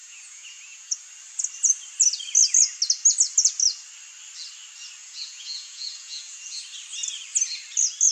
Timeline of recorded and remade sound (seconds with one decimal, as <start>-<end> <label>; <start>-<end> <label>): 0.0-1.0 remade; 1.0-5.0 recorded; 5.0-6.6 remade; 6.6-8.1 recorded